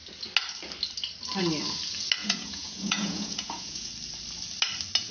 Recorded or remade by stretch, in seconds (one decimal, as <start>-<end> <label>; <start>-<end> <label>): 0.0-2.2 recorded; 2.2-3.9 remade; 3.9-5.1 recorded